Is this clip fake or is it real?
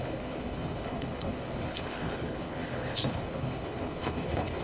fake